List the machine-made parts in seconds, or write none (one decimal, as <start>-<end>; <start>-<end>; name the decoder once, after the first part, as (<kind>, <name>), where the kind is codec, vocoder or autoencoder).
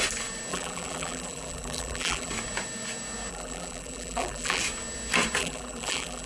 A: 0.5-2.3 (vocoder, BigVGAN v2); 3.3-4.6; 5.4-6.3